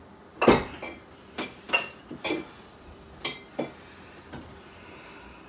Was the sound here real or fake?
real